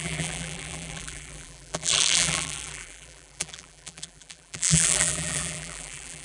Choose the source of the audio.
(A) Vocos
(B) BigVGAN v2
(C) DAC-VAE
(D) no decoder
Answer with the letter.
B